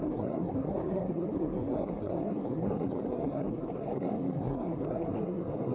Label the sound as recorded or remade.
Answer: remade